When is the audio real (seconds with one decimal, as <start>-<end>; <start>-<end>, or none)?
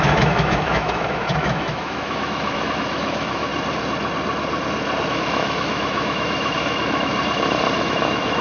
3.5-5.1; 7.1-7.8